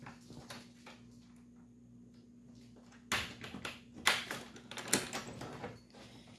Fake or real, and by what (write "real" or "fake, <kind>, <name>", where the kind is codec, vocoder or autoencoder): real